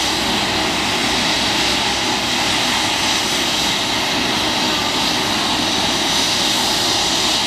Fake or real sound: real